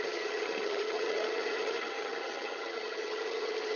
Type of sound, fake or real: fake